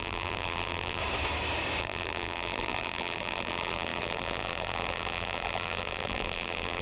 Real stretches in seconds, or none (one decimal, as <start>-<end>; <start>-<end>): 1.0-1.8